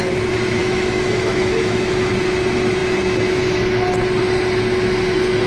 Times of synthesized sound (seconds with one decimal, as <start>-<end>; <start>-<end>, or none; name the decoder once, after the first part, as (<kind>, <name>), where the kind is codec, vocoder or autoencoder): 0.6-2.1 (autoencoder, DAC-VAE)